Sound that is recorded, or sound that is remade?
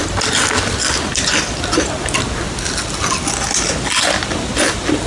recorded